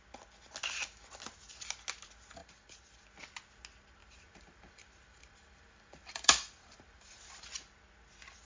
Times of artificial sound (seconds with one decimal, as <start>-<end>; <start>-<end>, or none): 2.4-3.0; 4.0-7.2